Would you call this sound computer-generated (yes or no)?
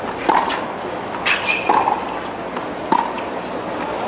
no